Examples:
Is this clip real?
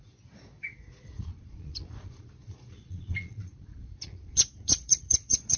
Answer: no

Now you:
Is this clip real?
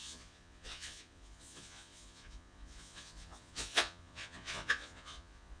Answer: no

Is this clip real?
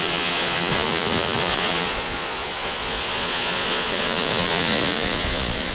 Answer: no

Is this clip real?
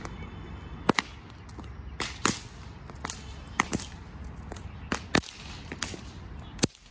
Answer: yes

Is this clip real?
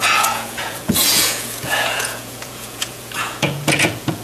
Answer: no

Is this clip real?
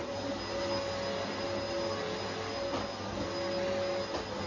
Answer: yes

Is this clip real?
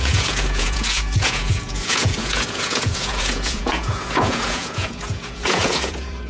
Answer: no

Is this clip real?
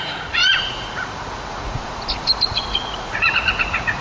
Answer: no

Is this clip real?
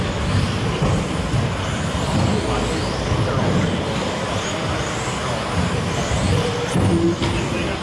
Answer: yes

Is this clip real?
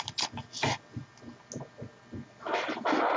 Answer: yes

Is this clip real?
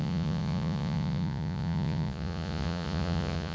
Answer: no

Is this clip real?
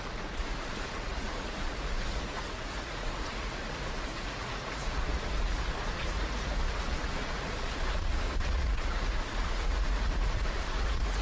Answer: no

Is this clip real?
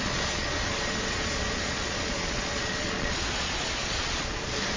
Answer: no